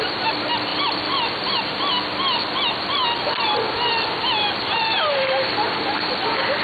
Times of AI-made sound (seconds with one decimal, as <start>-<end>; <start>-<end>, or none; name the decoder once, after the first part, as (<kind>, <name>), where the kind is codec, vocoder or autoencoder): 4.9-6.0 (vocoder, BigVGAN v2)